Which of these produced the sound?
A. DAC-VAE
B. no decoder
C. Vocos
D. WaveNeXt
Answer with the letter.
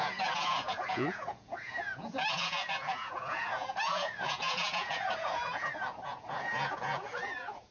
C